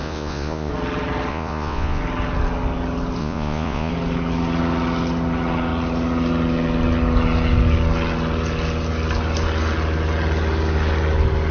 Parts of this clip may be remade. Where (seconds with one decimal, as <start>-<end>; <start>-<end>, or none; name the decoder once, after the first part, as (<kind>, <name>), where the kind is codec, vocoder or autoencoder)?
0.0-0.7 (vocoder, Vocos); 1.3-2.0; 3.2-3.9